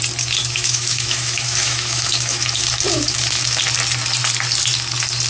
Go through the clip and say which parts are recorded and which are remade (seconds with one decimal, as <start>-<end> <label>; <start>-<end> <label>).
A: 0.0-0.4 recorded; 0.4-3.6 remade; 3.6-5.3 recorded